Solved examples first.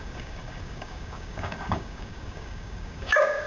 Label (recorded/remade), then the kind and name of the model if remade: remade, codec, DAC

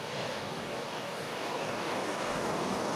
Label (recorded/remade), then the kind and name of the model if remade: remade, codec, DAC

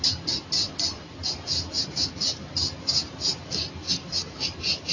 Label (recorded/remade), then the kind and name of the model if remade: recorded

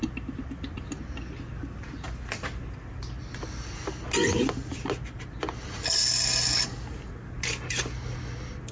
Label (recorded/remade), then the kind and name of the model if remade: recorded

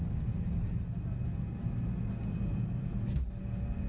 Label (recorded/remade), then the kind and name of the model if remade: recorded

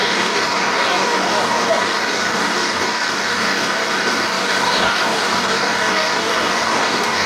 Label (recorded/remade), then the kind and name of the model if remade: remade, codec, DAC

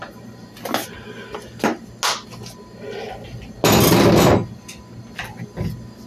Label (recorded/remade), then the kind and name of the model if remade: recorded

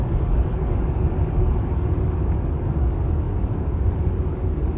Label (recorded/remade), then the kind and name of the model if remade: remade, codec, DAC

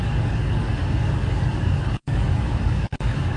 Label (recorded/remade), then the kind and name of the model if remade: remade, codec, DAC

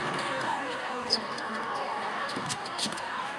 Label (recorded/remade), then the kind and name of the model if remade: remade, codec, DAC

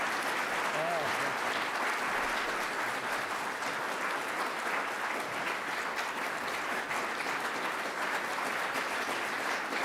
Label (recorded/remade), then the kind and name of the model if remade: recorded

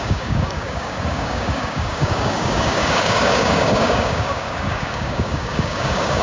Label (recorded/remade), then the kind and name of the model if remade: remade, codec, DAC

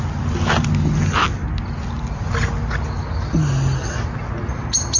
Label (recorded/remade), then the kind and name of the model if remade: recorded